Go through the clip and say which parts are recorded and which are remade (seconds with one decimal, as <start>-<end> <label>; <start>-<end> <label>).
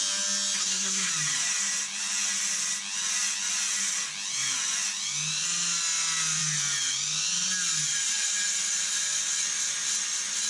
0.0-0.6 recorded; 0.6-1.1 remade; 1.1-10.5 recorded